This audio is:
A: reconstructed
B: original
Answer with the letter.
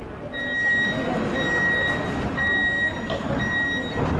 B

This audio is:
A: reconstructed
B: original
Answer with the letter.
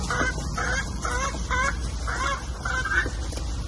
B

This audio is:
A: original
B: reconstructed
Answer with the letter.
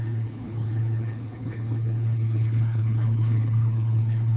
B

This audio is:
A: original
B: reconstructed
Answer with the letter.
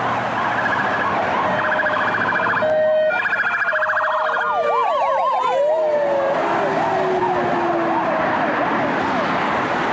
A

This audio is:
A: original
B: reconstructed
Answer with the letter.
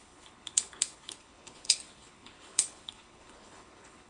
B